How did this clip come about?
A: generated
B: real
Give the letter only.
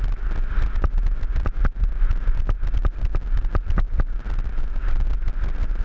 B